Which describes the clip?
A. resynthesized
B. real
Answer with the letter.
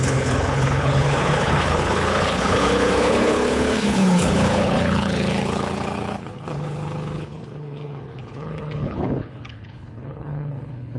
A